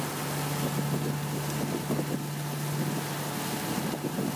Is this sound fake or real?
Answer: real